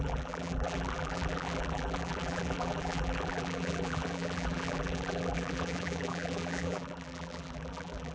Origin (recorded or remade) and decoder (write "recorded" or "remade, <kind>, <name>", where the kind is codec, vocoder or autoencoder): remade, vocoder, BigVGAN v2